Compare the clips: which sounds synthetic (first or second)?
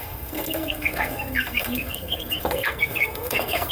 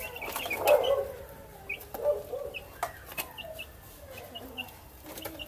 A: first